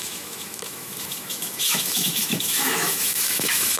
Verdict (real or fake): fake